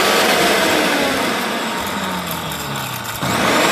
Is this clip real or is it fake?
real